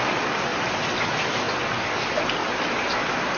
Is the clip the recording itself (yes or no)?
yes